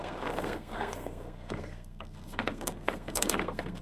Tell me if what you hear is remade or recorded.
remade